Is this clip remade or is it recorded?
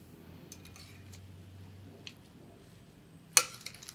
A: recorded